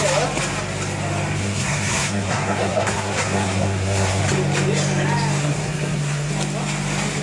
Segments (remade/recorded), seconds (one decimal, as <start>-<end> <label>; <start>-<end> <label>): 0.0-1.4 recorded; 1.4-4.2 remade; 4.2-5.4 recorded; 5.4-6.3 remade; 6.3-7.2 recorded

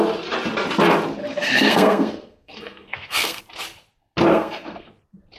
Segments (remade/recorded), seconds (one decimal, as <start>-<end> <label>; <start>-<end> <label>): 0.0-1.2 recorded; 1.2-3.4 remade; 3.4-4.3 recorded; 4.3-4.9 remade; 4.9-5.4 recorded

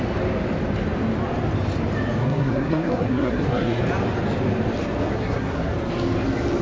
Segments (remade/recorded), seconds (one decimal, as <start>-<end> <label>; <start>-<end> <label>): 0.0-2.2 recorded; 2.2-3.8 remade; 3.8-5.1 recorded; 5.1-5.7 remade; 5.7-6.6 recorded

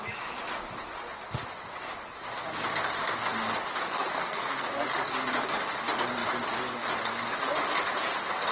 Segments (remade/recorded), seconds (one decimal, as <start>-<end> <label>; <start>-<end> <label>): 0.0-3.9 recorded; 3.9-4.7 remade; 4.7-8.5 recorded

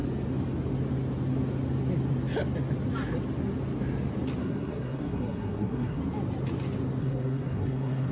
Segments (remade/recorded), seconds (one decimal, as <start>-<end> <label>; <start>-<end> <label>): 0.0-4.4 recorded; 4.4-6.0 remade; 6.0-7.0 recorded; 7.0-8.1 remade

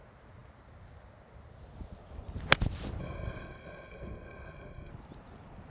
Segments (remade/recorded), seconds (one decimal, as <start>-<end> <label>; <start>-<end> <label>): 0.0-3.0 recorded; 3.0-4.9 remade; 4.9-5.7 recorded

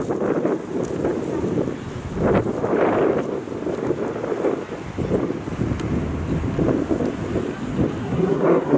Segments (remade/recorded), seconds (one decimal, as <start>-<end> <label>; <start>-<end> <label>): 0.0-8.0 recorded; 8.0-8.8 remade

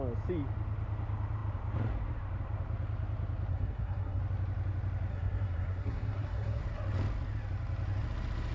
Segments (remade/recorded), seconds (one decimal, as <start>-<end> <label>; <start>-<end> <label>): 0.0-3.5 recorded; 3.5-4.2 remade; 4.2-5.1 recorded; 5.1-6.6 remade; 6.6-8.5 recorded